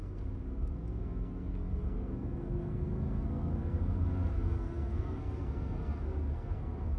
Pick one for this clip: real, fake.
fake